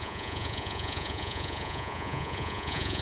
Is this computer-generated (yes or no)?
yes